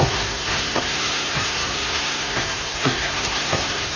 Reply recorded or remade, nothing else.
remade